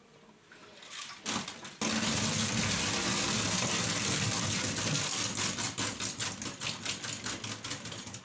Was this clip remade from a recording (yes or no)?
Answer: no